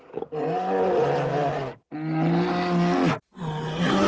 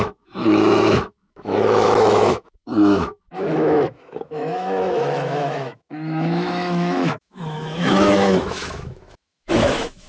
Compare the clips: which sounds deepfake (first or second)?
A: second